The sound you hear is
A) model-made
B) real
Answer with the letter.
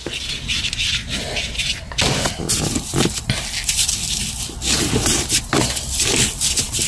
B